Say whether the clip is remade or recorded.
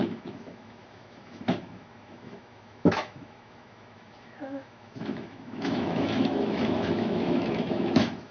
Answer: remade